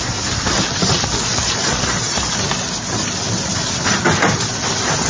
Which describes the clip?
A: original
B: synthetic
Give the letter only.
A